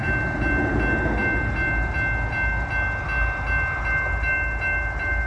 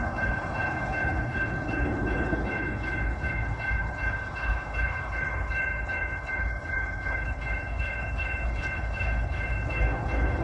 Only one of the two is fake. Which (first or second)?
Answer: second